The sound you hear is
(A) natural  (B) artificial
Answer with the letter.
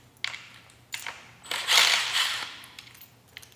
A